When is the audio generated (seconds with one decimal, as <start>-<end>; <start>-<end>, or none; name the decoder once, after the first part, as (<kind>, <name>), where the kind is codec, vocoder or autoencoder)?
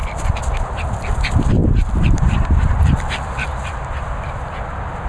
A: 1.6-3.0 (vocoder, BigVGAN v2)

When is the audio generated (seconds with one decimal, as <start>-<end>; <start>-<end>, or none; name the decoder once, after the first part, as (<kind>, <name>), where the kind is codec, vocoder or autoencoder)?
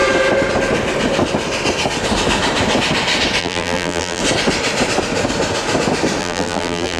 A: 3.4-4.2 (vocoder, BigVGAN v2); 6.2-7.0